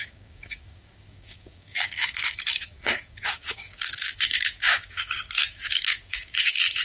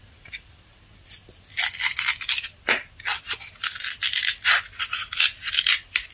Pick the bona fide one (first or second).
second